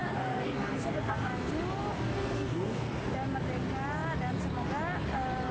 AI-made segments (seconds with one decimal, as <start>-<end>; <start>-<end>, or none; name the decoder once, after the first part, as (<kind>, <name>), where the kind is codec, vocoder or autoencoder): 0.0-1.5 (codec, SNAC); 2.1-3.0